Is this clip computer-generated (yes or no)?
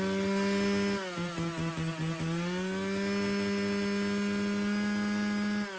no